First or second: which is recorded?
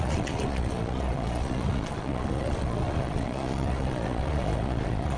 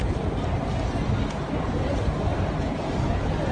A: second